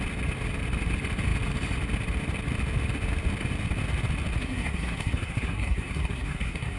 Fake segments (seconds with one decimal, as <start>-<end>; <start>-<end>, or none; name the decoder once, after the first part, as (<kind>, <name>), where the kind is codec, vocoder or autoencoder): 4.4-6.8 (codec, SNAC)